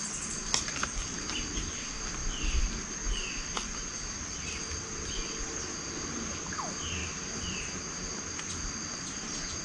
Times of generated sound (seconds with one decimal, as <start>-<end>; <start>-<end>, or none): none